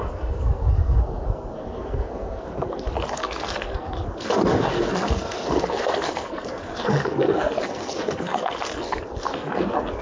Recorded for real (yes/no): no